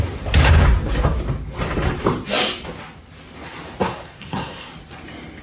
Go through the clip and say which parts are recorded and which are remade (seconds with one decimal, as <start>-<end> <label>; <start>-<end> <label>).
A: 0.0-3.8 recorded; 3.8-4.7 remade; 4.7-5.4 recorded